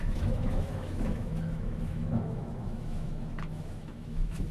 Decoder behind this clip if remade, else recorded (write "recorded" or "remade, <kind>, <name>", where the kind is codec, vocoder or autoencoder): remade, autoencoder, DAC-VAE